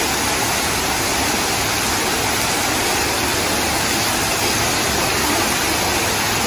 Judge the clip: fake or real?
real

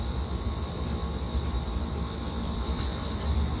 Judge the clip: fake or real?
fake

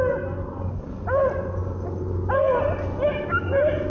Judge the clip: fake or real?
real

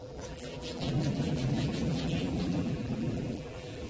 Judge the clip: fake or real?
fake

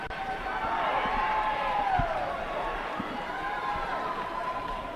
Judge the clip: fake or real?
fake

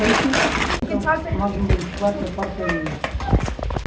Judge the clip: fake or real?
real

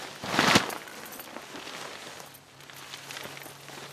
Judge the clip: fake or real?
real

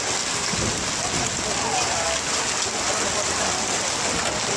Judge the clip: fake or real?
real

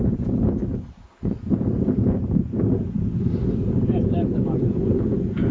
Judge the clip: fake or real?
real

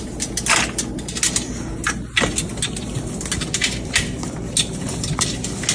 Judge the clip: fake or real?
real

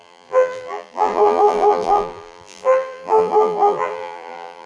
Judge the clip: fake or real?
fake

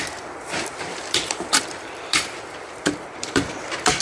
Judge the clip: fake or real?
fake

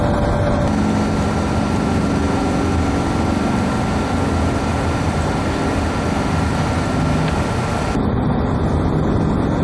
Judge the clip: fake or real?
real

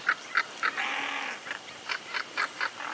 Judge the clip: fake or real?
real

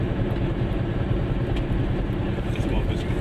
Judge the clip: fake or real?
fake